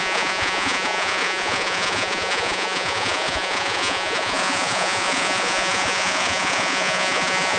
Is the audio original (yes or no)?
no